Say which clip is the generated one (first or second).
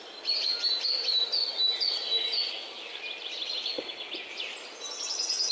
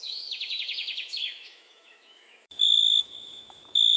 second